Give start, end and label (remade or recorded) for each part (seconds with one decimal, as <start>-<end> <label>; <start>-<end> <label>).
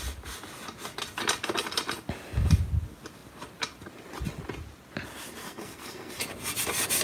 0.0-5.4 recorded; 5.4-6.1 remade; 6.1-7.0 recorded